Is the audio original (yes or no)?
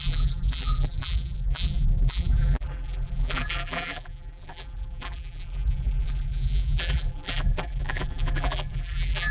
no